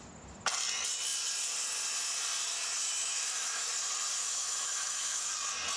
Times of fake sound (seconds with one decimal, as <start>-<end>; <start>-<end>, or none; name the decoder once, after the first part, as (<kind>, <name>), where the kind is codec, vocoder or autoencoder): 3.0-3.7 (autoencoder, DAC-VAE); 4.2-5.3